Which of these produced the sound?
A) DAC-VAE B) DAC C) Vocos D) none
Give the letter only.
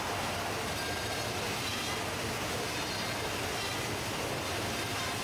D